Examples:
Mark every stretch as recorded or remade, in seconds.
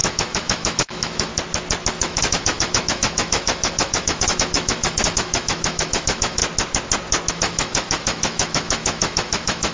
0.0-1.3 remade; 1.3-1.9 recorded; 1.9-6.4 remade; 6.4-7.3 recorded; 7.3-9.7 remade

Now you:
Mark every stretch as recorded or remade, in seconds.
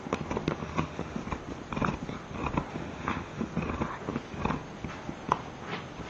0.0-0.6 recorded; 0.6-1.2 remade; 1.2-2.7 recorded; 2.7-3.5 remade; 3.5-6.1 recorded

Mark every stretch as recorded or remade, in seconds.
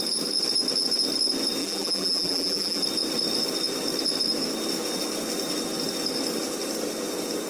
0.0-1.6 recorded; 1.6-2.8 remade; 2.8-7.5 recorded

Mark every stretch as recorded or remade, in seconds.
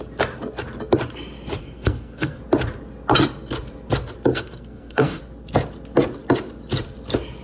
0.0-1.6 recorded; 1.6-2.4 remade; 2.4-4.3 recorded; 4.3-5.2 remade; 5.2-7.4 recorded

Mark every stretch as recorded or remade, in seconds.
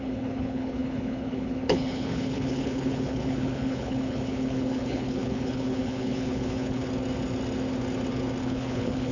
0.0-6.8 remade; 6.8-8.4 recorded; 8.4-9.1 remade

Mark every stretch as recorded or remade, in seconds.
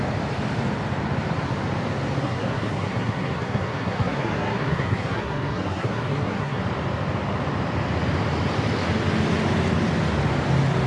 0.0-2.2 recorded; 2.2-6.6 remade; 6.6-10.9 recorded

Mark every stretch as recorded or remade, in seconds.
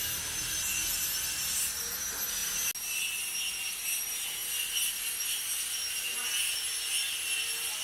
0.0-7.8 recorded